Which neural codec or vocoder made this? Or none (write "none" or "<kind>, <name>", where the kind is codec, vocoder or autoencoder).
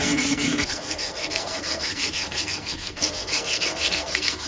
codec, SNAC